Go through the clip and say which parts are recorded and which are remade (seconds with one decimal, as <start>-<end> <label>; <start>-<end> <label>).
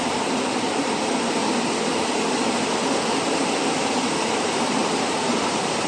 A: 0.0-1.4 remade; 1.4-4.3 recorded; 4.3-5.9 remade